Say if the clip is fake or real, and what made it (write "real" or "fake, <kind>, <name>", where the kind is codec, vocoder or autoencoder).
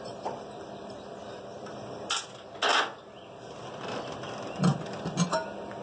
real